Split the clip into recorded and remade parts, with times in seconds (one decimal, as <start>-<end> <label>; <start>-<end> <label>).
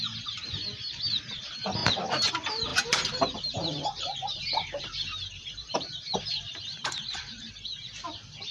0.0-2.7 recorded; 2.7-7.5 remade; 7.5-8.5 recorded